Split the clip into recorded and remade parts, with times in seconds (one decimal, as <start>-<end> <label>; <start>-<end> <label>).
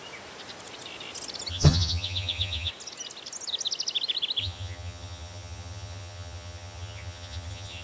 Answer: 0.0-1.5 recorded; 1.5-2.7 remade; 2.7-4.4 recorded; 4.4-7.8 remade